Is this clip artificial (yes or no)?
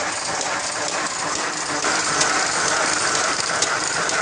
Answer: yes